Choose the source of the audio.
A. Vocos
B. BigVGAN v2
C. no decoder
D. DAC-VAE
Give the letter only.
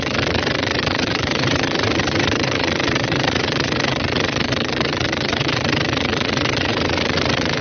A